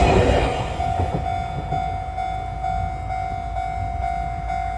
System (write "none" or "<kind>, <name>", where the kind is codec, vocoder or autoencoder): none